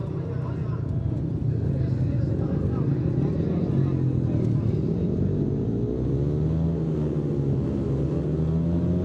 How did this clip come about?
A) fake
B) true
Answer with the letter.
B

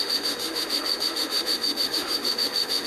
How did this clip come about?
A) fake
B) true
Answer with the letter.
A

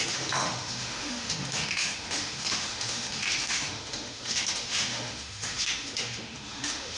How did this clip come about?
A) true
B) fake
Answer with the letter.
B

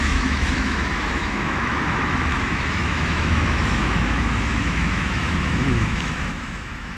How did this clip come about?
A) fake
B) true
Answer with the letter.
A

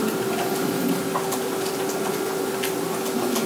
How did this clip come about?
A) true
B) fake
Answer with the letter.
A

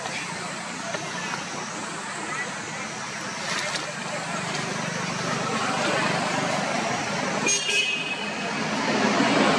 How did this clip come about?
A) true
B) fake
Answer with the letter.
A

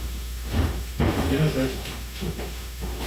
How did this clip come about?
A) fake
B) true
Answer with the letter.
A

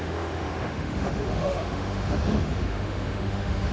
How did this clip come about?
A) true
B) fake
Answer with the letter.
B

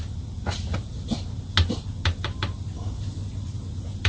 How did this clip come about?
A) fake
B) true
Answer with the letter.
B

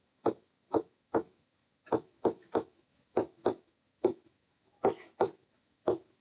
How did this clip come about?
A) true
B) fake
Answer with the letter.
B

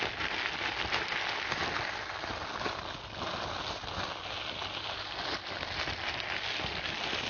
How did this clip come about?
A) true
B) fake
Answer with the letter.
A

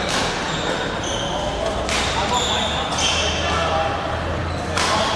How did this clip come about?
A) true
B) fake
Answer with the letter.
A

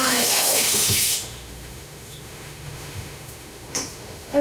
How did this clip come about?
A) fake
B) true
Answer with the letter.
A